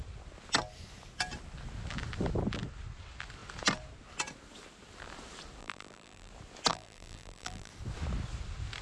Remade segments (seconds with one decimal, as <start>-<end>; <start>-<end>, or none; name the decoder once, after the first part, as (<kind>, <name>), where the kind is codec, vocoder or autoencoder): 5.6-6.3 (vocoder, BigVGAN v2); 6.7-7.7